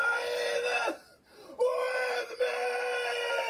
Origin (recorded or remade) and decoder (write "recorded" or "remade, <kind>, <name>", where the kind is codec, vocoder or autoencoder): remade, vocoder, BigVGAN v2